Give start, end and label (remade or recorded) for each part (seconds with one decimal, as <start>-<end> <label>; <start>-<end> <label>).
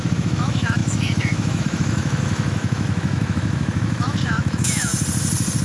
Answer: 0.0-4.9 remade; 4.9-5.6 recorded